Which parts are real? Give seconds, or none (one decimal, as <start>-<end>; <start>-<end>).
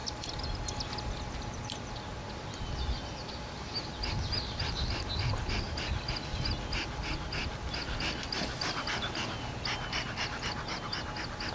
0.0-11.5